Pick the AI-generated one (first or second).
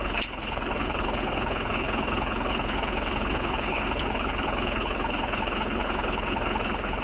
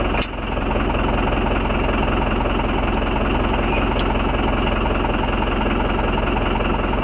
first